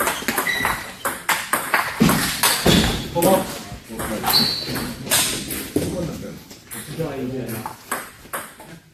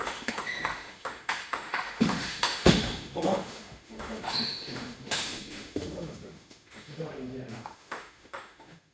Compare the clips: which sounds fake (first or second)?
second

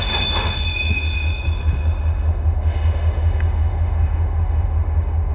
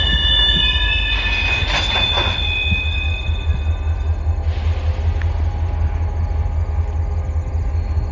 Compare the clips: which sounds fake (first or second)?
first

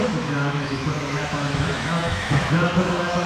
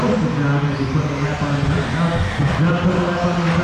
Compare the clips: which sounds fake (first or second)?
first